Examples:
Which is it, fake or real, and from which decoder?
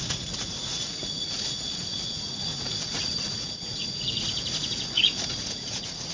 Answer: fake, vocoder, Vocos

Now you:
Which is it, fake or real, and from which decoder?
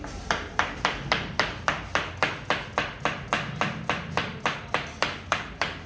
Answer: real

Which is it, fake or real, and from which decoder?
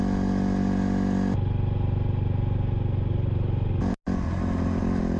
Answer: real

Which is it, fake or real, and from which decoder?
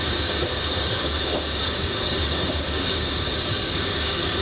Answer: fake, codec, DAC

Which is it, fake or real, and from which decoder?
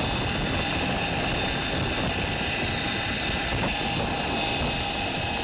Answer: real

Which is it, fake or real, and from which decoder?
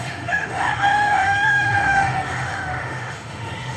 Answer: fake, autoencoder, DAC-VAE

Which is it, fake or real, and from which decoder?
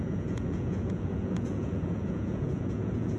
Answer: fake, vocoder, Vocos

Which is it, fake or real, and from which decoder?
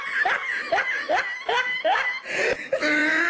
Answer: real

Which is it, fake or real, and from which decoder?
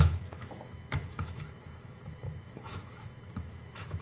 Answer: fake, autoencoder, DAC-VAE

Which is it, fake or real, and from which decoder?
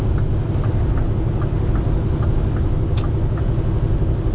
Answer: real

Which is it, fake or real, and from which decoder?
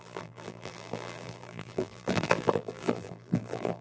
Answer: fake, vocoder, BigVGAN v2